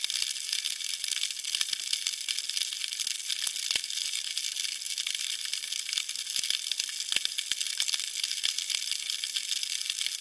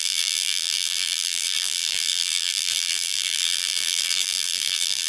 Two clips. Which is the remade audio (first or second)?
second